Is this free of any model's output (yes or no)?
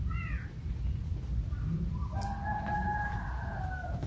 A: yes